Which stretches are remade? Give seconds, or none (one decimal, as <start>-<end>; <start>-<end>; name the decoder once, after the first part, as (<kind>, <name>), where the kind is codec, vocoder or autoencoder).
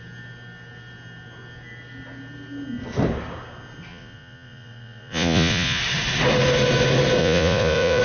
3.9-5.8 (vocoder, Vocos); 7.2-8.0